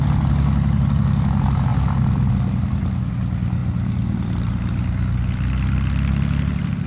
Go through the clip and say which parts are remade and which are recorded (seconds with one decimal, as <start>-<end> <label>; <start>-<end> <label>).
0.0-1.7 recorded; 1.7-2.3 remade; 2.3-3.6 recorded; 3.6-5.4 remade; 5.4-6.9 recorded